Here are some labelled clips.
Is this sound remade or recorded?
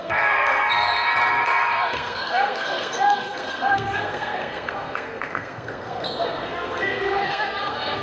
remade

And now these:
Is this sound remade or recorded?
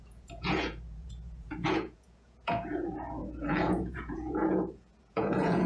remade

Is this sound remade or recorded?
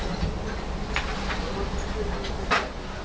recorded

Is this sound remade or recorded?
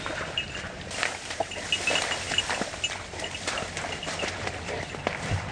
recorded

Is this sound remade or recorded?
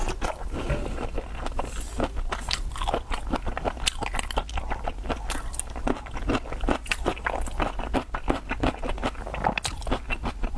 recorded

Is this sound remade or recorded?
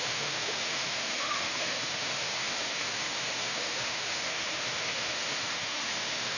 remade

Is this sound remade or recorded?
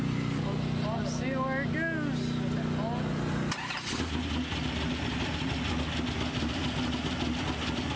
recorded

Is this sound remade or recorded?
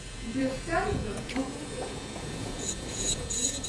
remade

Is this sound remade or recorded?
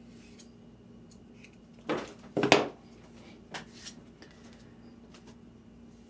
recorded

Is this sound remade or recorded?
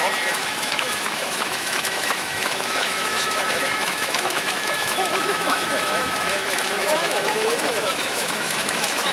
remade